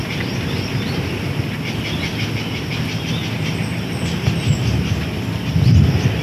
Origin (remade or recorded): recorded